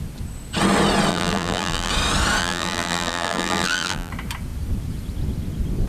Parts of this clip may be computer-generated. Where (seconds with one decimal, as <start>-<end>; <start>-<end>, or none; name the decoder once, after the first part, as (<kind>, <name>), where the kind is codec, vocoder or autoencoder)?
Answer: 1.1-1.9 (vocoder, BigVGAN v2); 2.4-4.1